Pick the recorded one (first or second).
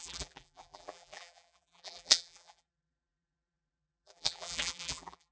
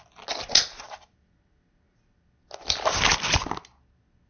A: second